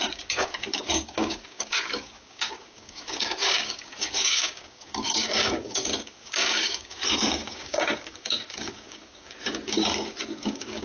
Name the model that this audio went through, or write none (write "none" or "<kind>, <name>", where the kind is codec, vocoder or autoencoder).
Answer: codec, DAC